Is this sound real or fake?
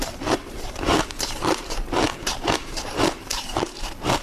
fake